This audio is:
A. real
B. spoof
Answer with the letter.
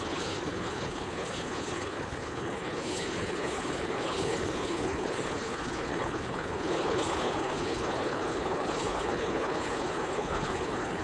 B